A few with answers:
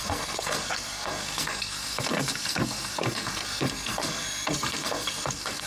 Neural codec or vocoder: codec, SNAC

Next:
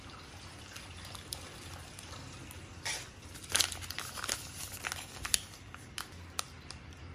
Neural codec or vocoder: none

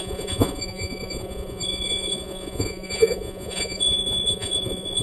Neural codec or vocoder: vocoder, Vocos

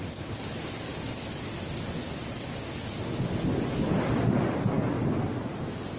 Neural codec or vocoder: none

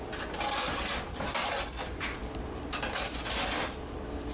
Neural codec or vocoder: none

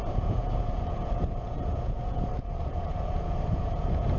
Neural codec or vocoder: vocoder, Vocos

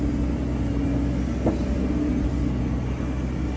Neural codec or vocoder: none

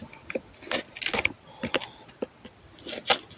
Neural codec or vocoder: none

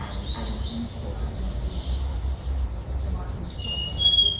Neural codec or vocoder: none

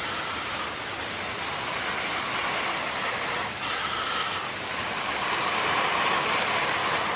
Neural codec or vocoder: none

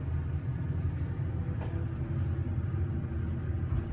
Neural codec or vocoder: none